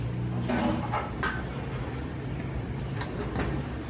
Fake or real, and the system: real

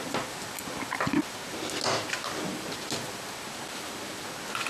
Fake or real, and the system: real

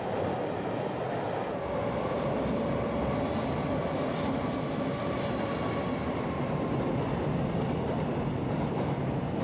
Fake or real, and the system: real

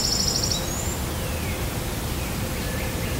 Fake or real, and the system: real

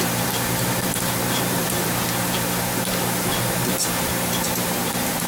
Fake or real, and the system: fake, vocoder, BigVGAN v2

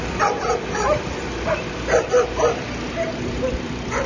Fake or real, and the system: fake, vocoder, BigVGAN v2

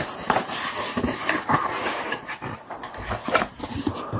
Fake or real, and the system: fake, vocoder, BigVGAN v2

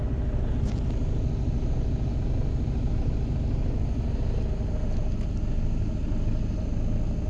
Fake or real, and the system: real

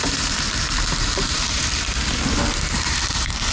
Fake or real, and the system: fake, vocoder, BigVGAN v2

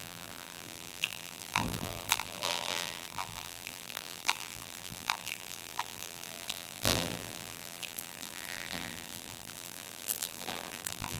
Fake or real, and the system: fake, vocoder, BigVGAN v2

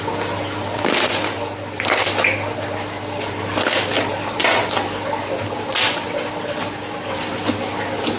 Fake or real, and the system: real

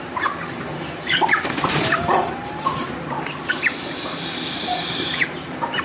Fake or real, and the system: fake, vocoder, BigVGAN v2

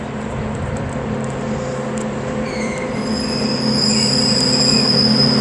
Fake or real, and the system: fake, vocoder, BigVGAN v2